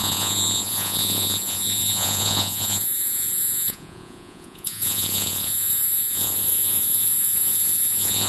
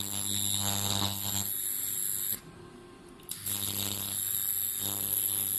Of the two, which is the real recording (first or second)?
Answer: second